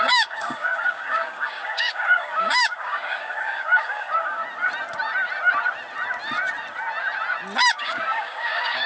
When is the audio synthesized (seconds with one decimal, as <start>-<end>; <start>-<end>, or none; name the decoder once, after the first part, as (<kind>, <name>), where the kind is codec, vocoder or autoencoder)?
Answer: 0.0-4.4 (codec, DAC); 7.7-8.9